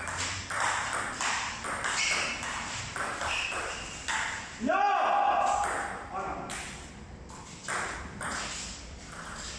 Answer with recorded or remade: recorded